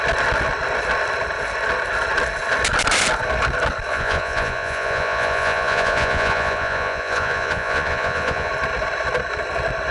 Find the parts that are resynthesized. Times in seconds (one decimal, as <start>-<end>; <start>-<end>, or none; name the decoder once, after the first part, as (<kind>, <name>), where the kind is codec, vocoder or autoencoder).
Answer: 3.9-8.5 (vocoder, Vocos)